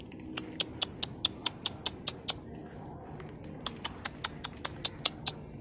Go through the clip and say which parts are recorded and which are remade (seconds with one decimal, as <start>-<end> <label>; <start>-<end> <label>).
0.0-2.6 recorded; 2.6-4.2 remade; 4.2-5.6 recorded